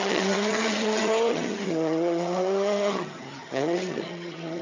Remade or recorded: remade